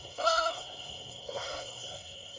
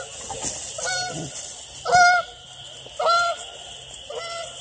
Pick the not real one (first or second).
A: first